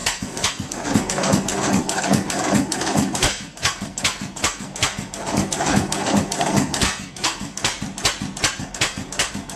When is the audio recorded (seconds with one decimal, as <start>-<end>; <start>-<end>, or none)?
7.7-8.6